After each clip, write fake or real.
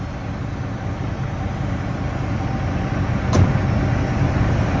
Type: real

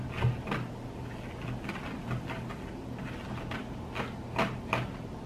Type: real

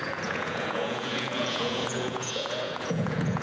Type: fake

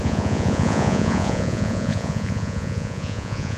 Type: fake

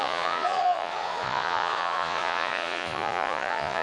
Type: fake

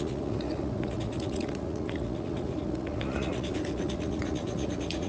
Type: fake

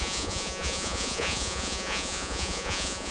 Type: fake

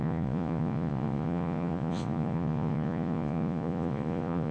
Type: fake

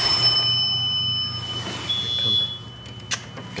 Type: real